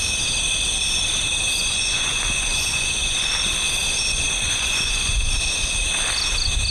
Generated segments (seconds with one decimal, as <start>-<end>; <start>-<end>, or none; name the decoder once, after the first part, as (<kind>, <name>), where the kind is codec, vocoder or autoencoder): 1.6-3.3 (vocoder, Vocos); 3.8-5.3